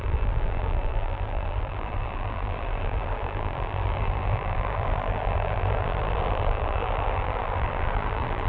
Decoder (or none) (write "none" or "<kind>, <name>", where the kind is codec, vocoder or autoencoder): vocoder, BigVGAN v2